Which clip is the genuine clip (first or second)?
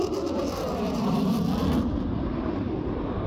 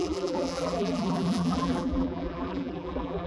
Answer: first